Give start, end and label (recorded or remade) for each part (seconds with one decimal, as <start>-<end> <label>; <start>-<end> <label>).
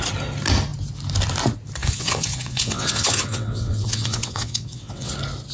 0.0-1.8 recorded; 1.8-5.1 remade; 5.1-5.5 recorded